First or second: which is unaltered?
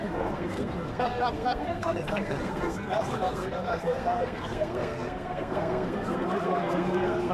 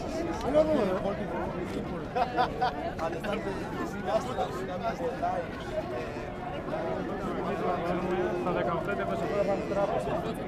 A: second